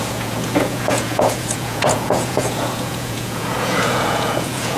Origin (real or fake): fake